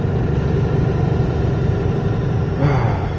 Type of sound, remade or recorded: recorded